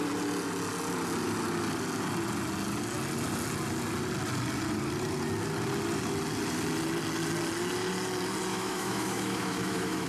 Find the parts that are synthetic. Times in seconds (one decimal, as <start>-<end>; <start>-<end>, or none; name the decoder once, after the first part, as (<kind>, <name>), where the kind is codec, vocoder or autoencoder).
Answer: 8.5-10.1 (autoencoder, DAC-VAE)